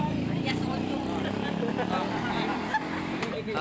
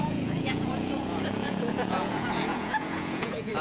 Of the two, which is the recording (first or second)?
first